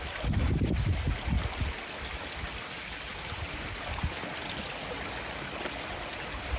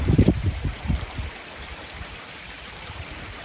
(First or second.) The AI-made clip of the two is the second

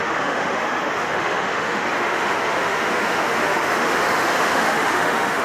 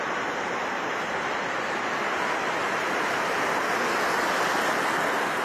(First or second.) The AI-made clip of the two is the first